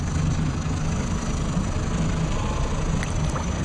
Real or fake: real